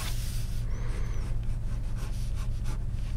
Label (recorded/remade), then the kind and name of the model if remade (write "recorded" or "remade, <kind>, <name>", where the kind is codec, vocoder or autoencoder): recorded